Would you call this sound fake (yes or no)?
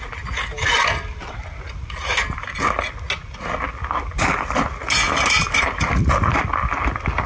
no